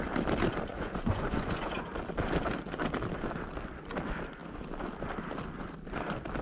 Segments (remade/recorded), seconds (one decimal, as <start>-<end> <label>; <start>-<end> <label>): 0.0-0.7 recorded; 0.7-1.9 remade; 1.9-6.4 recorded